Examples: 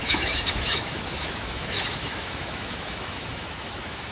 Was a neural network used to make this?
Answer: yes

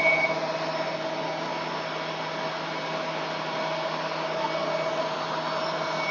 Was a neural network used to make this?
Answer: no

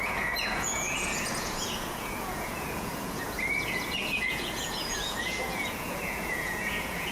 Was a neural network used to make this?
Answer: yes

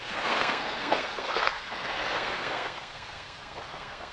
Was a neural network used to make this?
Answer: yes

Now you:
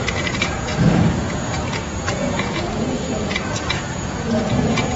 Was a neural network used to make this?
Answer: yes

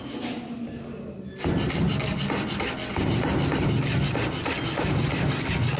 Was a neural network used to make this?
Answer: no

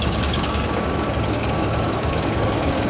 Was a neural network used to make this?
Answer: yes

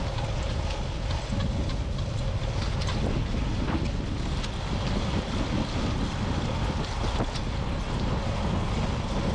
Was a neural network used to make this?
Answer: no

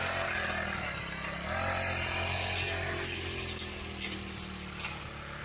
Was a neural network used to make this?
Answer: no